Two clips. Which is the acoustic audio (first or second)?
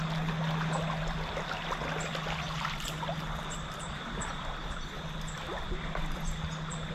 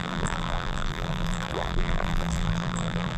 first